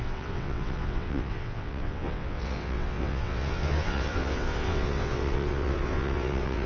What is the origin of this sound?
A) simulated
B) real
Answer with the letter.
A